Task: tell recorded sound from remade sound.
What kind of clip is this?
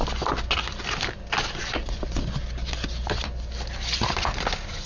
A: recorded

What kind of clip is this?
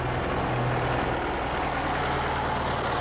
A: recorded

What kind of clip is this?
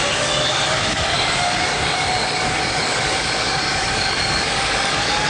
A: remade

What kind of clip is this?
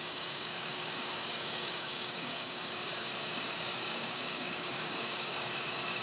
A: remade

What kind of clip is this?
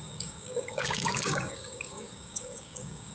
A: remade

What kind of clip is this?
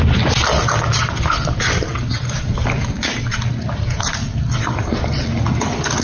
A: recorded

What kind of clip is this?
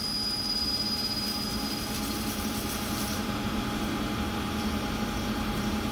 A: recorded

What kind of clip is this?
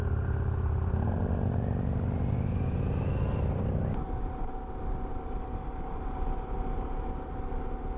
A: recorded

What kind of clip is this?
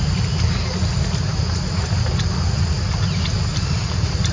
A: recorded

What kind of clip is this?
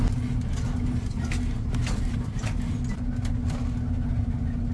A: recorded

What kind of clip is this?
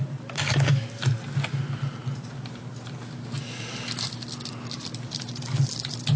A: recorded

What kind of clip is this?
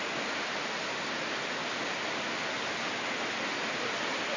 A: recorded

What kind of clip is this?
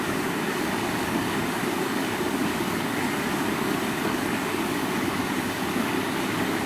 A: remade